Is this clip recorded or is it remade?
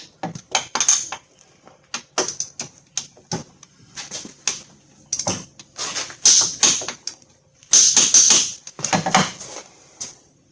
recorded